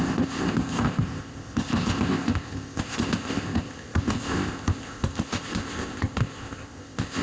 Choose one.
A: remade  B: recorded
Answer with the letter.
A